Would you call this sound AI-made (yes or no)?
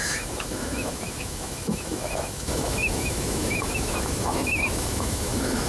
yes